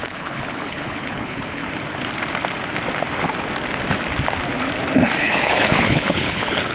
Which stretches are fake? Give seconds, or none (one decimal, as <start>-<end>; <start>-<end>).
0.0-1.6; 5.2-6.7

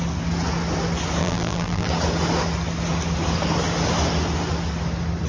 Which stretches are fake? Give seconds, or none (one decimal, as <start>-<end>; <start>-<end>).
1.2-1.9

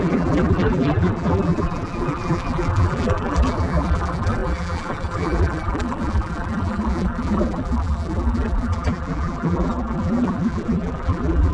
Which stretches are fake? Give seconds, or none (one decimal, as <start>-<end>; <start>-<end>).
0.0-11.5

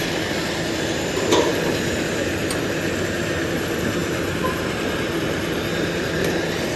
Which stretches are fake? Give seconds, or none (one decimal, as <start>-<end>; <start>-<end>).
0.0-1.5; 2.0-6.8

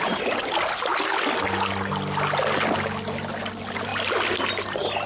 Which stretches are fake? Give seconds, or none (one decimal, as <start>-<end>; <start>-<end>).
0.4-1.0